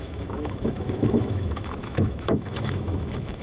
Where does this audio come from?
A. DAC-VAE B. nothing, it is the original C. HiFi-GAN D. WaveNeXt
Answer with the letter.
A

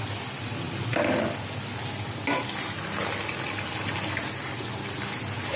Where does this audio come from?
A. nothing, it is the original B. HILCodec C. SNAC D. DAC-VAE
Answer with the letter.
A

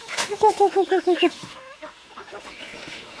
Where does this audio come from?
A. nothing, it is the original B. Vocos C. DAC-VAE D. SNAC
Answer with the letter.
C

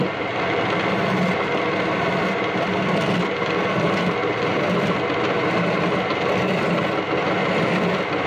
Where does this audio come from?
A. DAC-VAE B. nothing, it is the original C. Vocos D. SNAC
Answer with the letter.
B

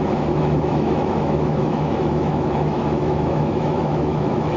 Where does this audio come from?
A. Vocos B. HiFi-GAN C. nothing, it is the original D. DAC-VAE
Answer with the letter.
D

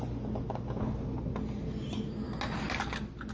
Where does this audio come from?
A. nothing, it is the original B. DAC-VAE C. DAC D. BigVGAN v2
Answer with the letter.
A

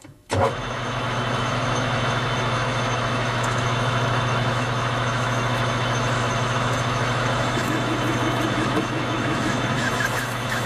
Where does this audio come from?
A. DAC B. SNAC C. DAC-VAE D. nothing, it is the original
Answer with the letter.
C